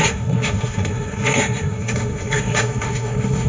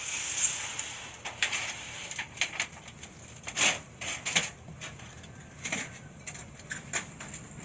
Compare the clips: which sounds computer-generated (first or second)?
first